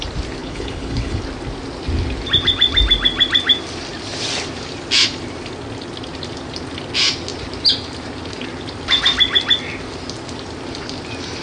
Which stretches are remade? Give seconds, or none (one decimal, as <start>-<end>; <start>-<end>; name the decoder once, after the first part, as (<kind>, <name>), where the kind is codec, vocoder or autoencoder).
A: 0.4-1.2 (codec, HILCodec)